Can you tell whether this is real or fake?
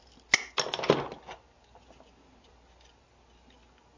real